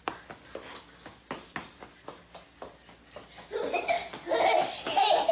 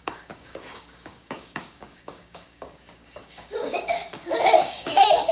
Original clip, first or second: first